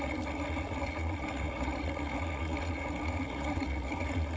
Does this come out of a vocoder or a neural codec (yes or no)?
yes